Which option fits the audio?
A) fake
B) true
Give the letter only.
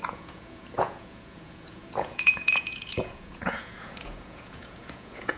A